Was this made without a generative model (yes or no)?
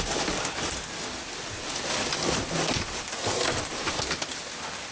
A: yes